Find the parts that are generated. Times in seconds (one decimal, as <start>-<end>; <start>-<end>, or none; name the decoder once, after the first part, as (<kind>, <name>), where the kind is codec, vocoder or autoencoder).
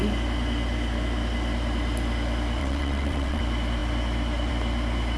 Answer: 2.6-3.4 (vocoder, WaveNeXt)